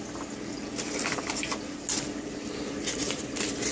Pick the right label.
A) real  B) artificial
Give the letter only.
A